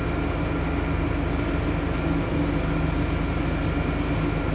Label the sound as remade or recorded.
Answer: recorded